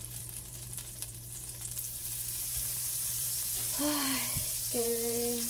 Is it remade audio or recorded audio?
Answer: remade